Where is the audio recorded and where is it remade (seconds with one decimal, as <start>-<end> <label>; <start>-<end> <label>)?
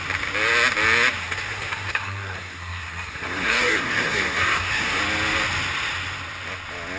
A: 0.0-1.2 recorded; 1.2-5.0 remade; 5.0-7.0 recorded